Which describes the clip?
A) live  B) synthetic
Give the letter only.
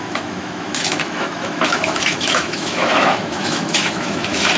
B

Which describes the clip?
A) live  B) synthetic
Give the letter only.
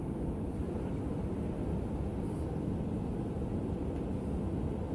A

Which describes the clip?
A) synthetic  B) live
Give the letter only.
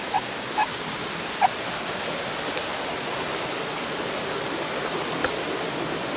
B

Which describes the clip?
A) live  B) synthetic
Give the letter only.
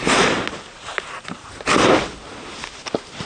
A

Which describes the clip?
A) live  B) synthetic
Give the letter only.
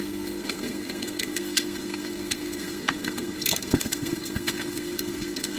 B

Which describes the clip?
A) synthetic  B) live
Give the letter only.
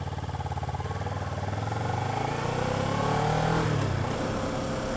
B